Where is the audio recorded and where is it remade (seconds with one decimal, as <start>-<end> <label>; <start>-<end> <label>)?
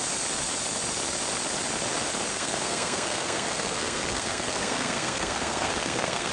0.0-2.3 recorded; 2.3-6.3 remade